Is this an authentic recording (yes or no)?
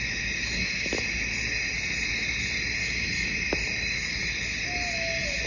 yes